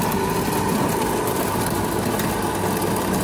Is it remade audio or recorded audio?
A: recorded